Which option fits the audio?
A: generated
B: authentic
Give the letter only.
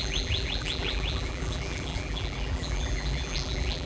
A